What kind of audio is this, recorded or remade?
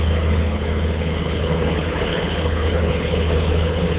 remade